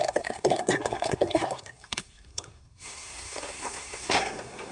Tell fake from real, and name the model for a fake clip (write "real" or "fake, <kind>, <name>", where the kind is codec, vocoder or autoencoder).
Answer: fake, codec, SNAC